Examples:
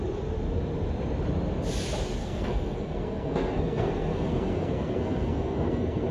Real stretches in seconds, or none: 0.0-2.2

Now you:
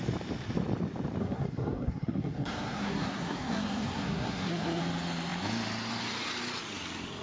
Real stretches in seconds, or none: 0.0-1.2; 4.8-7.2

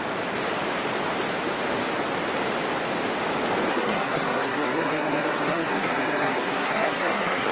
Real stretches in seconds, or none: 0.0-3.7

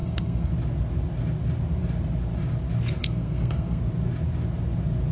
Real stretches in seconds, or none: 0.5-3.0; 3.8-5.1

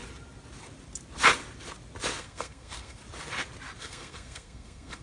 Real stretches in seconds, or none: 0.0-2.2; 3.0-3.8